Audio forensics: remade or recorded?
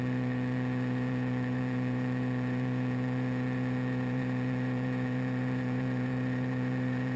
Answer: remade